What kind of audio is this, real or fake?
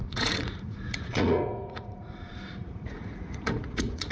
fake